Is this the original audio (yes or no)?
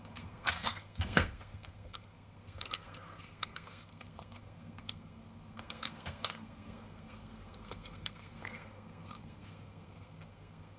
no